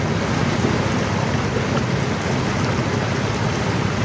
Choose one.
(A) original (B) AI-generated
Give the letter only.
B